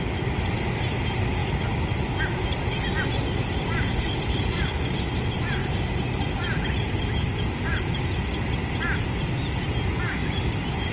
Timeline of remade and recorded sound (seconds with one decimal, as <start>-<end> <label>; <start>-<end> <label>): 0.0-10.9 recorded